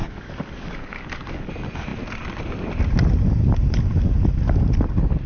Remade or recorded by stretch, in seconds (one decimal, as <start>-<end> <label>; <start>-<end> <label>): 0.0-1.5 remade; 1.5-5.3 recorded